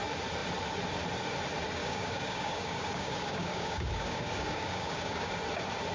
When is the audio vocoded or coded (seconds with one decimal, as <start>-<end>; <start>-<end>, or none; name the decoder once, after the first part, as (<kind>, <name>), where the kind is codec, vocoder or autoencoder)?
1.8-5.3 (codec, DAC)